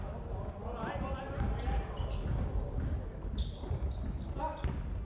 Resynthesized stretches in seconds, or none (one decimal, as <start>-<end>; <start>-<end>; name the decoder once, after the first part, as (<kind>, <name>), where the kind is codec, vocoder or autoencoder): none